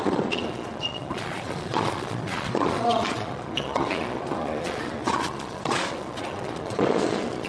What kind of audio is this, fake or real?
fake